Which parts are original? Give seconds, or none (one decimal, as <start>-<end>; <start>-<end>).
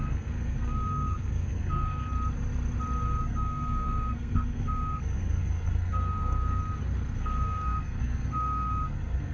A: 2.0-3.2; 6.6-7.2